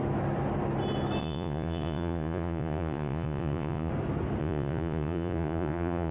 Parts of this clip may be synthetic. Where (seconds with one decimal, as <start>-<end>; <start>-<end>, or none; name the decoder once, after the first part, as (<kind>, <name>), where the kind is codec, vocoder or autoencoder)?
1.2-3.9 (vocoder, Vocos); 4.4-6.1

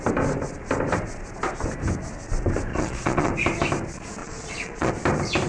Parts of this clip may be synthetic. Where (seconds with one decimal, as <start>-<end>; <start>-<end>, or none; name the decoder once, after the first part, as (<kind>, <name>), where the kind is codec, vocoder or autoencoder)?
2.7-3.3 (vocoder, Vocos); 4.2-4.9